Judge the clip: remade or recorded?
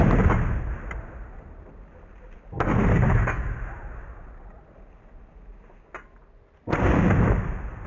recorded